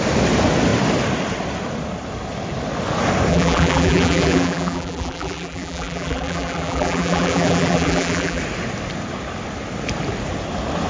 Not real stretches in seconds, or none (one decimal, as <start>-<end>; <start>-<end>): 3.3-8.4